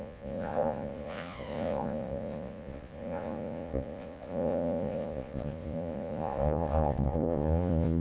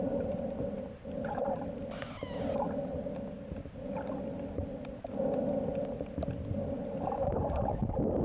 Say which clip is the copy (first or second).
first